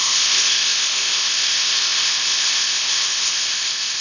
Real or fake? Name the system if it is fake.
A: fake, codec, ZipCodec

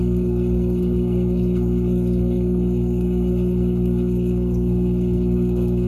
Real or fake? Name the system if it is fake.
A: fake, codec, SNAC